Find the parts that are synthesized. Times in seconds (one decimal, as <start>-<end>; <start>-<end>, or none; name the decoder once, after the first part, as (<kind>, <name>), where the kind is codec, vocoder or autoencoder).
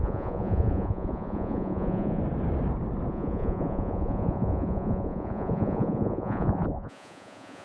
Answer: 0.0-2.2 (vocoder, Vocos); 3.1-7.6